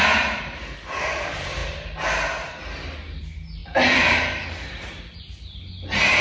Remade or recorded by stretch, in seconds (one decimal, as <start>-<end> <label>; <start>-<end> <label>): 0.0-3.6 recorded; 3.6-5.2 remade; 5.2-6.2 recorded